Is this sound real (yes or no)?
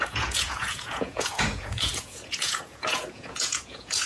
no